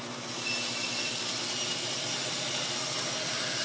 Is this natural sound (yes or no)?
yes